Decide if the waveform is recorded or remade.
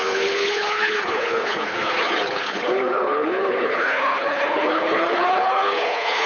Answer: remade